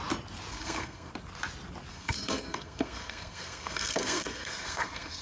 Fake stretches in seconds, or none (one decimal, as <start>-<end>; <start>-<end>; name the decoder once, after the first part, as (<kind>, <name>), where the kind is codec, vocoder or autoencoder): 0.5-1.1 (codec, SNAC); 1.9-5.2